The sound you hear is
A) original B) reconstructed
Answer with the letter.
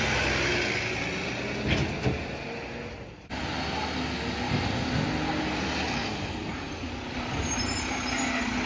A